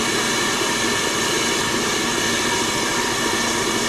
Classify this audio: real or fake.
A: real